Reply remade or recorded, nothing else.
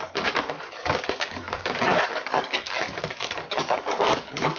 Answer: remade